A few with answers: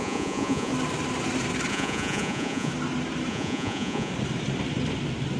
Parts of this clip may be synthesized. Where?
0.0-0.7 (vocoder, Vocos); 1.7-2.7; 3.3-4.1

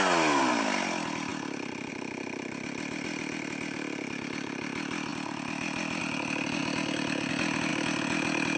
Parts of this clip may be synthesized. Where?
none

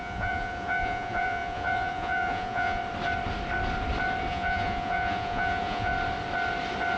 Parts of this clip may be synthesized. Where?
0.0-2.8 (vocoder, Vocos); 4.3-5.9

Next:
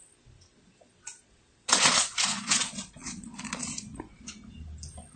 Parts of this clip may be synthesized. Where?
1.2-4.3 (vocoder, Vocos)

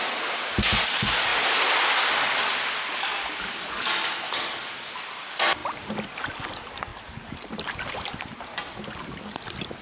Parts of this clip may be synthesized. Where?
none

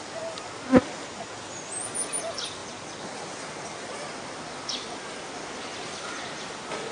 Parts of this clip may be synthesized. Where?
none

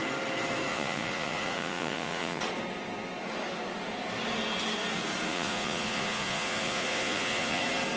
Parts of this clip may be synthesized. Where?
0.7-2.4 (vocoder, Vocos); 5.3-7.6